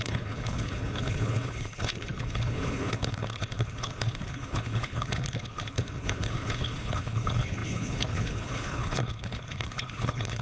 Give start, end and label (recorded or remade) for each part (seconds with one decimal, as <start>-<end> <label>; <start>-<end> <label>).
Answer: 0.0-10.4 remade